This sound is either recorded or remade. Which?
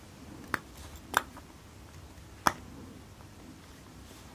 remade